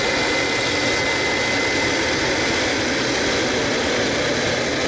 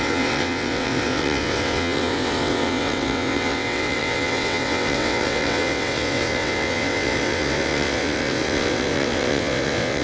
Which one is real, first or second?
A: first